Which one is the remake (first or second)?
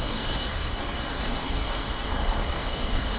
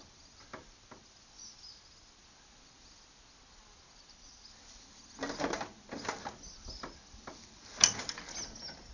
first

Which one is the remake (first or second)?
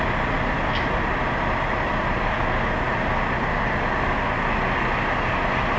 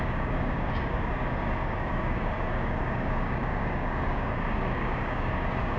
second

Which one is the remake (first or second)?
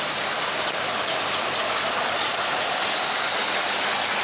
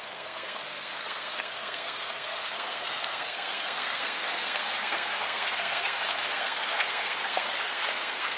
second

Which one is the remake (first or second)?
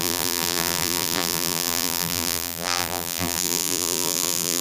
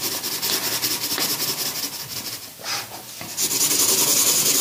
first